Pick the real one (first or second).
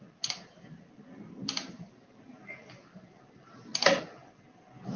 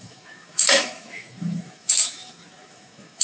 first